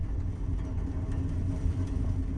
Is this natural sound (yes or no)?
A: yes